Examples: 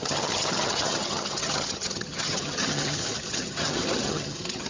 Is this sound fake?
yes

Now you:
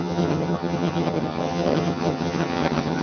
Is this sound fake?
yes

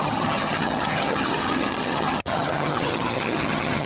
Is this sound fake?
yes